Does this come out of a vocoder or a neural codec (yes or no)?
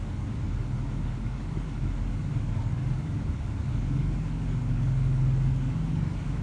yes